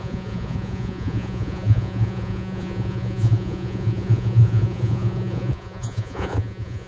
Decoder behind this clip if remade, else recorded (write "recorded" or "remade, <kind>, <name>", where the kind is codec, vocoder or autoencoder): remade, vocoder, Vocos